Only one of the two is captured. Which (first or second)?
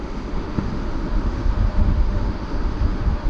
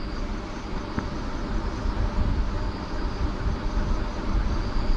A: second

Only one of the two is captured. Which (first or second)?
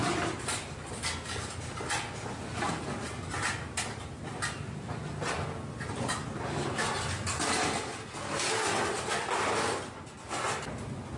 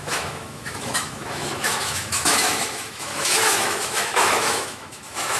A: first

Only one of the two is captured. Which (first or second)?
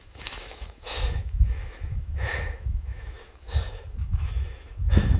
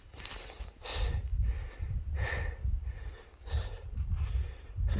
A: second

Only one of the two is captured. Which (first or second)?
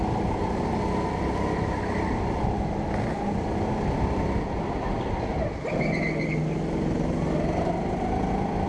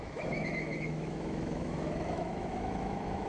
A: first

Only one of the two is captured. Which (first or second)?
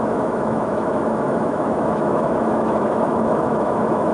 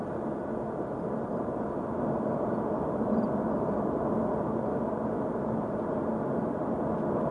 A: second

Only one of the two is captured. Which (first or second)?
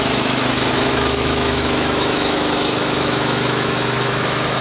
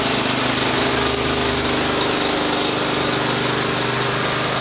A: second